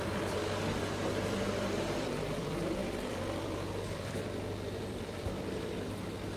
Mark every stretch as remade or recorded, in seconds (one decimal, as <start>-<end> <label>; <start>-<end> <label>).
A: 0.0-0.4 remade; 0.4-1.1 recorded; 1.1-6.4 remade